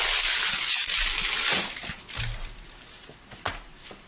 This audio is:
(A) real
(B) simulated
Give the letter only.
A